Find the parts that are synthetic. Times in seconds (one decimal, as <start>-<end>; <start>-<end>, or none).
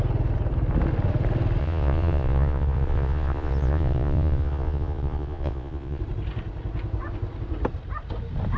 1.6-6.0